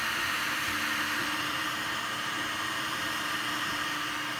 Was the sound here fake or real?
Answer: real